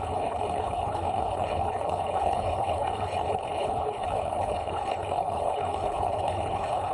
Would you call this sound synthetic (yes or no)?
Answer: yes